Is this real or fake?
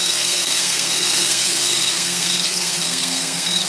fake